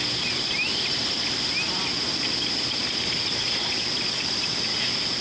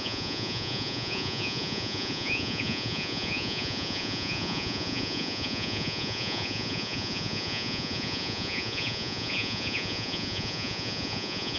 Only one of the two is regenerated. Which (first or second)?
second